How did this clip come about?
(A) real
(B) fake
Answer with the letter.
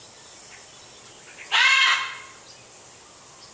A